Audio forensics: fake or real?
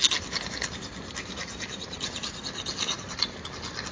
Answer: real